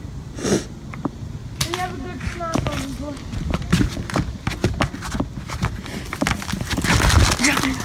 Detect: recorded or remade recorded